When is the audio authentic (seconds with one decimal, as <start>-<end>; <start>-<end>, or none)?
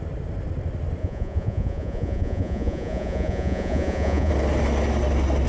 0.0-1.0; 4.3-5.5